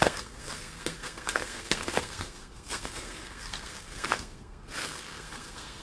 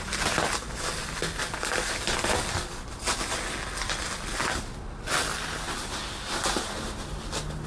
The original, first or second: second